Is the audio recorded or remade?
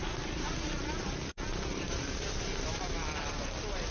recorded